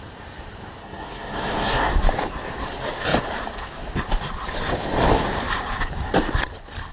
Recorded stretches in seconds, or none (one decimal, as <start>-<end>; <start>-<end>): 0.0-0.8; 1.9-6.9